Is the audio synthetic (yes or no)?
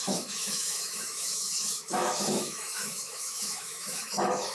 yes